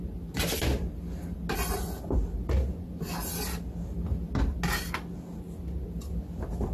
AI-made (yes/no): no